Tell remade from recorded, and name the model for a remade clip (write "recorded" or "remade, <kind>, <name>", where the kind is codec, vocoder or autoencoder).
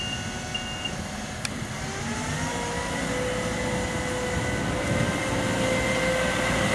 recorded